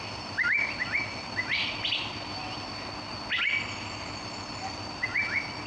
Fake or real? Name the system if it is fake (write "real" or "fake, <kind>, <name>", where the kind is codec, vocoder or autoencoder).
real